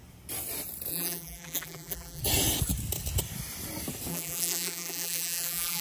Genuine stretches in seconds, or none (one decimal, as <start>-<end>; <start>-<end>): 0.0-0.9; 2.2-4.1